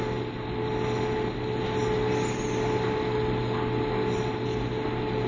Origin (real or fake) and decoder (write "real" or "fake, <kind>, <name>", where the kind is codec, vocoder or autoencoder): real